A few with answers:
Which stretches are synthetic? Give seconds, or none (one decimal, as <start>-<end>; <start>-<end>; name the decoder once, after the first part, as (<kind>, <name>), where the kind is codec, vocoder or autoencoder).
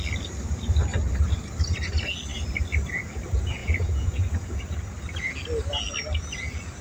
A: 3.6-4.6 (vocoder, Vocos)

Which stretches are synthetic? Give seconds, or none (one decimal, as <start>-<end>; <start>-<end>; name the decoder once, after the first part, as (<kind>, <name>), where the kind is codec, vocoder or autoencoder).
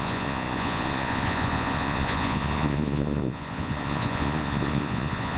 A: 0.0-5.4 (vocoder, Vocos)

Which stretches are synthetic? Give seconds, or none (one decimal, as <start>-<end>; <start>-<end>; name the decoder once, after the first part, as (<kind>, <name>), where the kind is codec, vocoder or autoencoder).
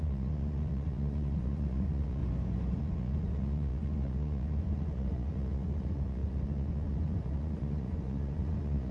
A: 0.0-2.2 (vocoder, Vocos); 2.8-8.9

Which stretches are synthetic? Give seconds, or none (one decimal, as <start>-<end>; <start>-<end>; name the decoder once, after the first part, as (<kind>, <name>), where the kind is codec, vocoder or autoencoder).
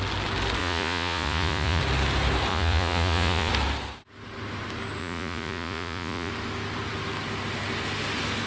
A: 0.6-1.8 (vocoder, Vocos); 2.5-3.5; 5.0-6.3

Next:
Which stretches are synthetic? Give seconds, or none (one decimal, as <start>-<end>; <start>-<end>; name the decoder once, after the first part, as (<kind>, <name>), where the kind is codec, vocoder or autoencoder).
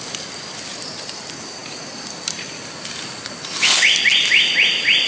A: none